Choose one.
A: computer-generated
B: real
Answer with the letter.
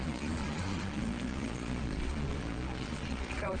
A